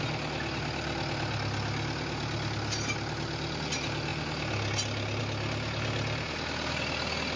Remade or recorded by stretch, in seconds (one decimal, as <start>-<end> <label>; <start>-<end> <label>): 0.0-7.4 recorded